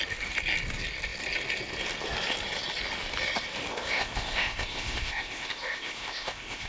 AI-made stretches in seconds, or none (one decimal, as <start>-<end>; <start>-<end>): 3.7-6.7